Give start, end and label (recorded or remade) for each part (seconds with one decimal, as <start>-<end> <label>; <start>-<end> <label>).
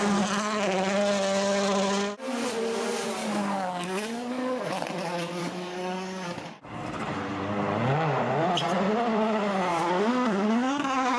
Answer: 0.0-3.2 recorded; 3.2-4.7 remade; 4.7-5.4 recorded; 5.4-6.6 remade; 6.6-9.7 recorded; 9.7-11.2 remade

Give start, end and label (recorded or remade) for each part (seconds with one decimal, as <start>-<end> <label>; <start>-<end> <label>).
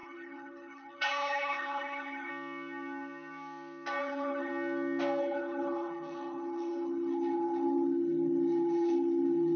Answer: 0.0-2.3 remade; 2.3-4.0 recorded; 4.0-4.5 remade; 4.5-5.2 recorded; 5.2-9.6 remade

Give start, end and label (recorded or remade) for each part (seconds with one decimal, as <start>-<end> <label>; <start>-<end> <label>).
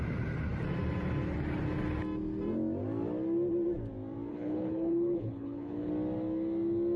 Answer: 0.0-4.3 recorded; 4.3-5.9 remade; 5.9-7.0 recorded